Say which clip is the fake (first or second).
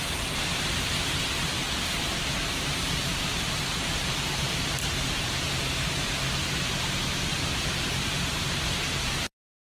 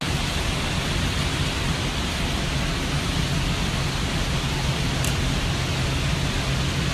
first